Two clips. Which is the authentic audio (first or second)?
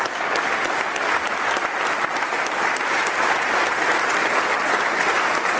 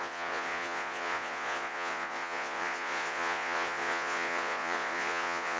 first